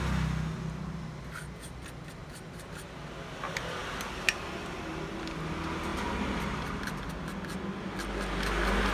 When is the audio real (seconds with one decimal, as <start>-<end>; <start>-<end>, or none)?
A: 0.0-2.2; 2.7-5.9; 7.0-8.9